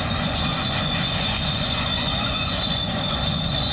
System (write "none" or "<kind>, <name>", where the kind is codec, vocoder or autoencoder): vocoder, Vocos